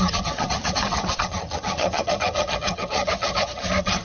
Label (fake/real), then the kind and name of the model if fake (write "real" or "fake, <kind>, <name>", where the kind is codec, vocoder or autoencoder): fake, vocoder, HiFi-GAN